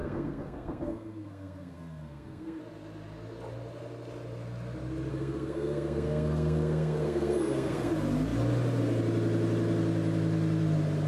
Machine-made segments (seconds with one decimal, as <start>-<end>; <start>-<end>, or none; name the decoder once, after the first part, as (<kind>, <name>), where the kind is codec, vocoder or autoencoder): 0.0-2.6 (codec, SNAC); 5.1-7.9